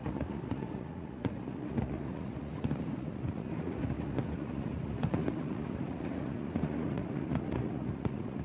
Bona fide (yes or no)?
no